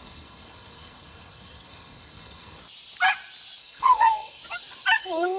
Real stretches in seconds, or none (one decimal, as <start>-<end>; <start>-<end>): 2.6-3.6; 4.4-5.0